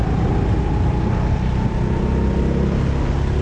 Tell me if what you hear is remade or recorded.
recorded